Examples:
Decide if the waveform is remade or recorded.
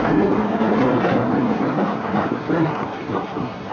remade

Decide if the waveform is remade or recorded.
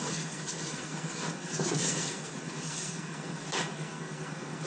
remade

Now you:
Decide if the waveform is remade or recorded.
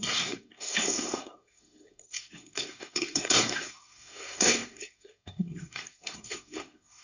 remade